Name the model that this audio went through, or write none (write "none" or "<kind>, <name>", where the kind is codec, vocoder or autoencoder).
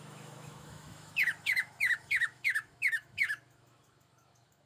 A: autoencoder, DAC-VAE